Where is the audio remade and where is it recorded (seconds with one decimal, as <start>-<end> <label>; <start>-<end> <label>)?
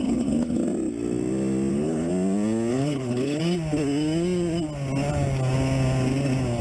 0.0-0.6 remade; 0.6-1.7 recorded; 1.7-2.1 remade; 2.1-2.7 recorded; 2.7-3.4 remade; 3.4-6.6 recorded